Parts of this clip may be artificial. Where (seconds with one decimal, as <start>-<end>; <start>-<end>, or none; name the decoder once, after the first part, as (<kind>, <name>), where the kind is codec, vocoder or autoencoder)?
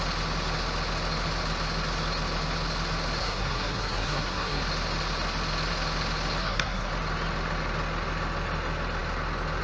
3.2-4.6 (codec, SNAC); 6.4-6.9